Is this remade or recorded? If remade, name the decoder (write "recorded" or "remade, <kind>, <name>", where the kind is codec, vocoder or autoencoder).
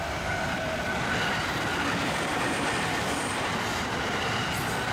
remade, vocoder, BigVGAN v2